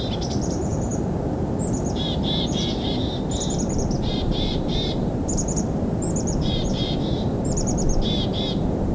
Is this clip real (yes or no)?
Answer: no